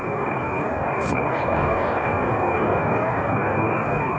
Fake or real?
fake